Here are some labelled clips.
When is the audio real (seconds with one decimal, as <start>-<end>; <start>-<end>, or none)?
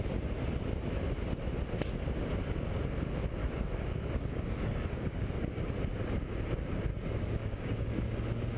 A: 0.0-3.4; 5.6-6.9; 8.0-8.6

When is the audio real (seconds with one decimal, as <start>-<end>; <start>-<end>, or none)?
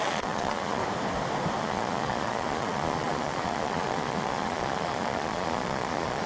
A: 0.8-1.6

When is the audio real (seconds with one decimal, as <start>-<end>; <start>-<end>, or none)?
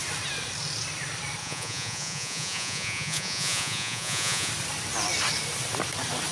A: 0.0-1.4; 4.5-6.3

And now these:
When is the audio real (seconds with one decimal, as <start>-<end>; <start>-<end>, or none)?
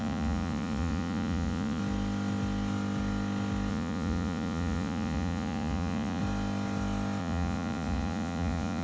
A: 1.8-3.7; 6.2-7.2